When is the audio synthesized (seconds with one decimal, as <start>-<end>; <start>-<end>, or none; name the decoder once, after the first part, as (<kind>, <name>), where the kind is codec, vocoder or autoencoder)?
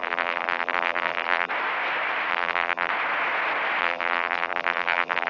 0.0-1.5 (vocoder, BigVGAN v2); 2.3-2.9; 3.8-5.3